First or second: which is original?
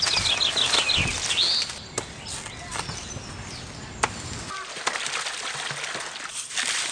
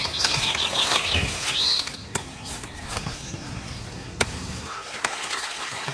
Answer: first